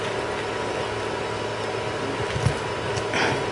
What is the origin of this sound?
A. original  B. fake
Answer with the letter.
A